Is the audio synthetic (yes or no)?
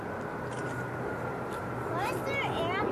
no